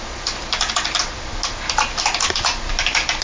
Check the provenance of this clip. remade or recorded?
recorded